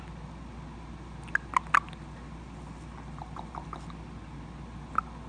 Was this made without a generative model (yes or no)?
yes